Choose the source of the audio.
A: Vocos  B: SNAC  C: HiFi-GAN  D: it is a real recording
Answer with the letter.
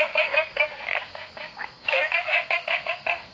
B